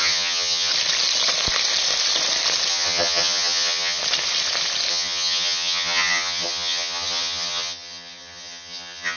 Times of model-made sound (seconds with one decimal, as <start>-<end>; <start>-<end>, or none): 0.0-0.7; 2.7-4.0; 4.9-9.2